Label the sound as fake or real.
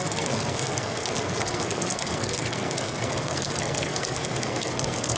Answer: fake